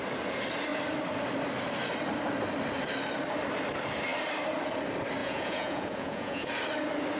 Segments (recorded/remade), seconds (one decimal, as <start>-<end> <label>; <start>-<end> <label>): 0.0-5.2 recorded; 5.2-6.5 remade; 6.5-7.2 recorded